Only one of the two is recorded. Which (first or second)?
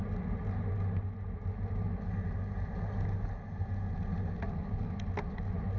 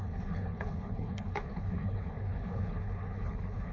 first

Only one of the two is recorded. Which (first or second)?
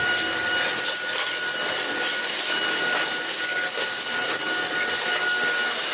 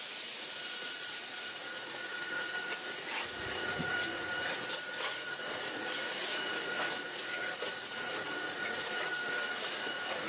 first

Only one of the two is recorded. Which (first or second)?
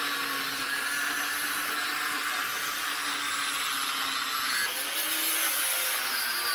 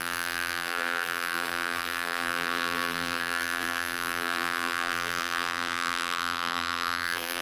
first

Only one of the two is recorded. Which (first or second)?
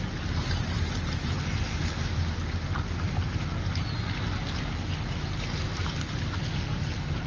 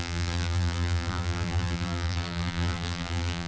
first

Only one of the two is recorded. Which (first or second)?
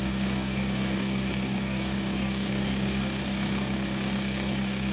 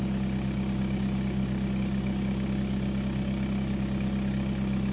second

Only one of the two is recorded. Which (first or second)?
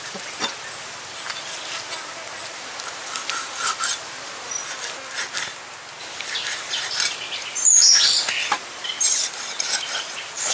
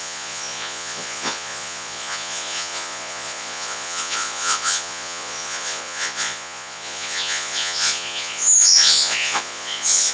first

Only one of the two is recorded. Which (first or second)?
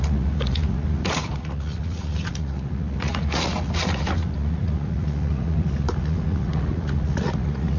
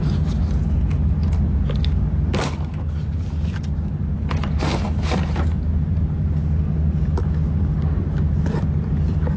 second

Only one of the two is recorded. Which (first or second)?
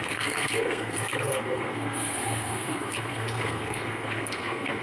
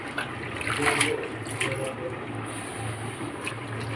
second